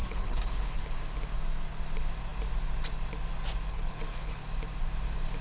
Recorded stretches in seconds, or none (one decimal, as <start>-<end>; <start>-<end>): 0.8-3.7; 4.4-5.4